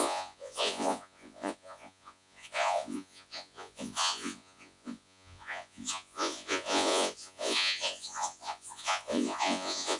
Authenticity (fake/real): fake